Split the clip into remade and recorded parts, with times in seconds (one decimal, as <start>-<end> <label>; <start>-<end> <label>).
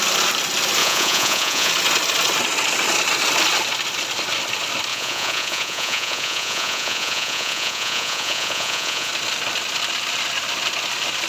0.0-0.8 recorded; 0.8-1.7 remade; 1.7-4.9 recorded; 4.9-9.1 remade; 9.1-11.3 recorded